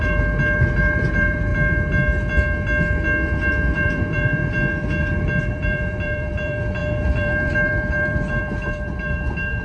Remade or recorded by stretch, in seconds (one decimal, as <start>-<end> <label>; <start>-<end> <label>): 0.0-1.5 remade; 1.5-3.5 recorded; 3.5-4.4 remade; 4.4-5.4 recorded; 5.4-9.6 remade

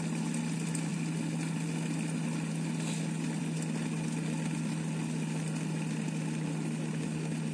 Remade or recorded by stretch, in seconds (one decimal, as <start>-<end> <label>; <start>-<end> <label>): 0.0-7.5 recorded

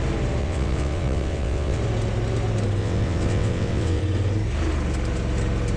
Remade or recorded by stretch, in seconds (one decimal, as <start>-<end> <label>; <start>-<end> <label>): 0.0-0.4 recorded; 0.4-1.8 remade; 1.8-2.8 recorded; 2.8-4.0 remade; 4.0-5.8 recorded

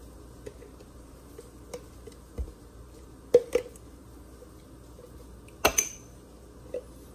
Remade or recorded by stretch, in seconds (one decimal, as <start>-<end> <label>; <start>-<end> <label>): 0.0-7.1 recorded

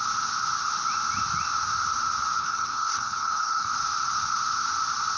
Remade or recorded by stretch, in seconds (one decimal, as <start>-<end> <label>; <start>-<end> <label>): 0.0-2.4 recorded; 2.4-3.7 remade; 3.7-5.2 recorded